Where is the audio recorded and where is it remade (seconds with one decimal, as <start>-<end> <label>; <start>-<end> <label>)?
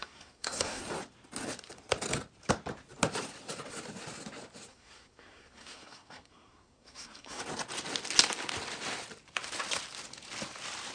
0.0-0.8 remade; 0.8-4.7 recorded; 4.7-7.4 remade; 7.4-10.9 recorded